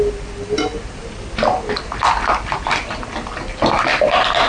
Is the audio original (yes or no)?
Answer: yes